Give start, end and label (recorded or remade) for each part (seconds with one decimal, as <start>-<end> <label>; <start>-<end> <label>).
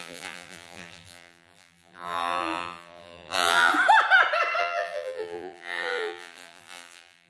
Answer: 0.0-3.7 remade; 3.7-4.6 recorded; 4.6-7.3 remade